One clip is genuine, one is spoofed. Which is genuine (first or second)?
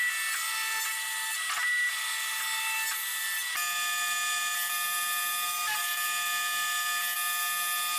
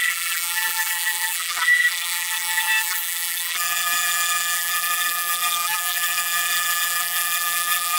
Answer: first